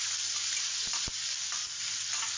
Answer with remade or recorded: recorded